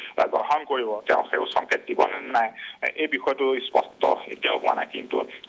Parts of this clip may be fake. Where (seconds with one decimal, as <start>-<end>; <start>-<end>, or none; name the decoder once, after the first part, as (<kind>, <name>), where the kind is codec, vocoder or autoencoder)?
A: 0.0-0.4 (vocoder, Vocos); 1.0-2.3; 3.7-5.5